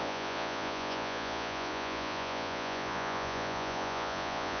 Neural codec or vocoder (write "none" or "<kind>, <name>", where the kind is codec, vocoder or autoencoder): vocoder, Vocos